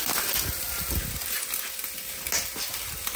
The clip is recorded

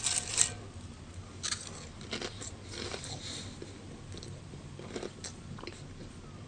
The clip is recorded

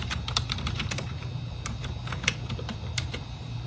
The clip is remade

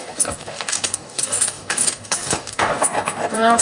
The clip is remade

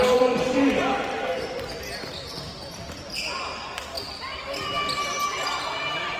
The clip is recorded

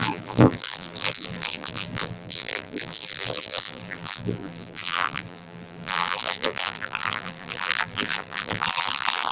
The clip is remade